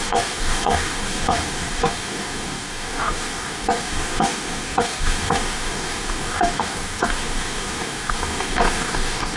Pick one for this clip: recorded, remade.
remade